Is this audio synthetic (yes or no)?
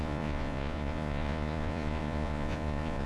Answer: yes